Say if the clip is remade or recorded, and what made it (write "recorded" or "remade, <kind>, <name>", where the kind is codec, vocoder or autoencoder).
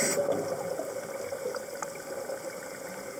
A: recorded